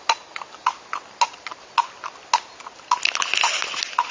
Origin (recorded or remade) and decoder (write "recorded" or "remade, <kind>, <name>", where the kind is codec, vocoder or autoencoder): recorded